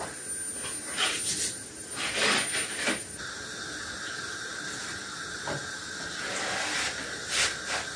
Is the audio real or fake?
real